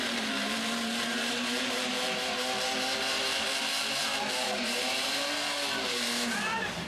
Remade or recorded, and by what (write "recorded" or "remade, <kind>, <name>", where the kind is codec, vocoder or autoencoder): remade, vocoder, BigVGAN v2